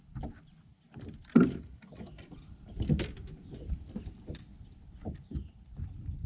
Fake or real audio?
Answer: real